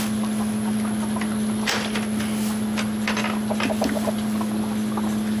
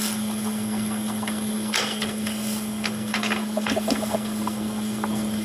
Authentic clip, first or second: first